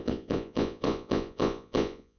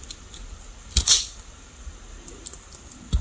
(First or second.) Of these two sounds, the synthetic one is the first